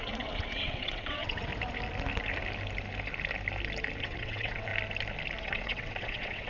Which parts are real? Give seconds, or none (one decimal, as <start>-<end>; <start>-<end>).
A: 1.5-4.0; 4.7-5.4